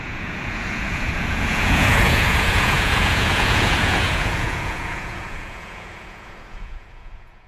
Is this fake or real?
fake